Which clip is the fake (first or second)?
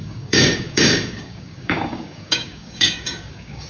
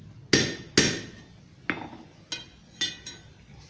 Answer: first